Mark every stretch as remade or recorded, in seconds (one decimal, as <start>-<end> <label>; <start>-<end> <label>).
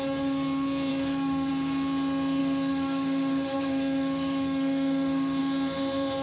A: 0.0-0.9 recorded; 0.9-1.5 remade; 1.5-2.4 recorded; 2.4-5.4 remade; 5.4-6.2 recorded